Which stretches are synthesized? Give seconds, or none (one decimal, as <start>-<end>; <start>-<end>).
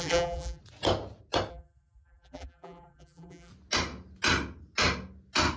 0.0-0.6; 1.5-3.5